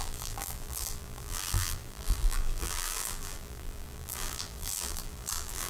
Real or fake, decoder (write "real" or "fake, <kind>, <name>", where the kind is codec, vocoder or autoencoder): fake, vocoder, BigVGAN v2